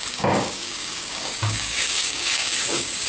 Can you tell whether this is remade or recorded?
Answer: remade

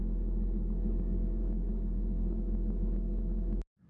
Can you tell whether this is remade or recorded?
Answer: remade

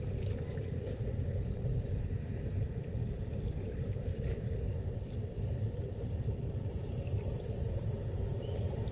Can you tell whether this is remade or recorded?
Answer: remade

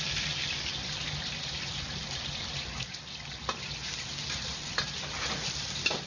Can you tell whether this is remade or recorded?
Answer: recorded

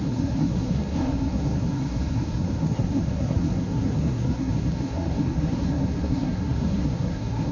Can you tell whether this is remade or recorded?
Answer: remade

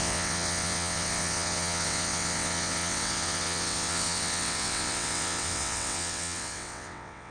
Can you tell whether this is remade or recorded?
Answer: remade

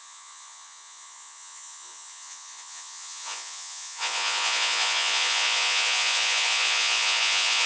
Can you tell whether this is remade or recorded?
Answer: remade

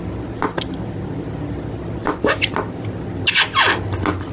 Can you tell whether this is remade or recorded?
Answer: recorded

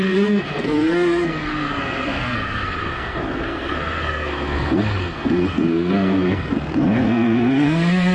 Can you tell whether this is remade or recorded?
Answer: remade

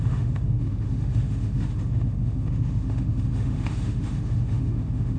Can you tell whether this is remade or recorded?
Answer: remade